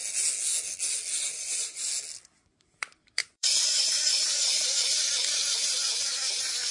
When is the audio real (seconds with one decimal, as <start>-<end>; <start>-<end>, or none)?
0.0-1.3; 1.9-3.2; 3.8-6.7